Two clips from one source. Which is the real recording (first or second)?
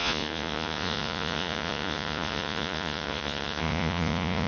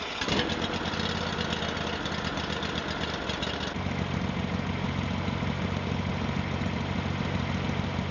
second